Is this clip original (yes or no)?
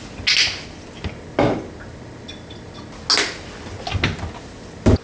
yes